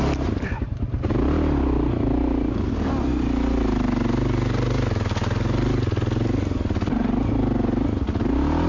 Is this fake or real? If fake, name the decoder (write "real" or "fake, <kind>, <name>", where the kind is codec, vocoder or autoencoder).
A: real